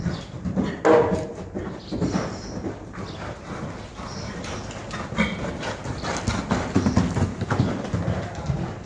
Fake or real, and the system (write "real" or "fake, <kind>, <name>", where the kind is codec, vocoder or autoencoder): real